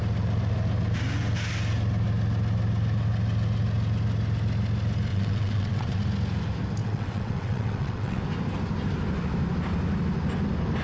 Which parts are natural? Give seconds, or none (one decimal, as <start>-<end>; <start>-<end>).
0.0-5.1; 6.0-6.8; 8.2-10.8